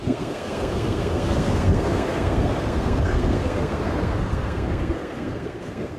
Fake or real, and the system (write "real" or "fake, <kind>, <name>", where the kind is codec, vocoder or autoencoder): fake, codec, SNAC